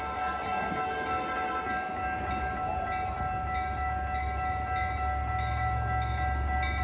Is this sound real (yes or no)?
yes